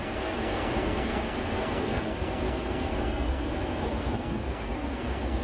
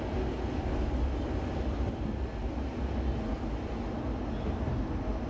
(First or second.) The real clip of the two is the second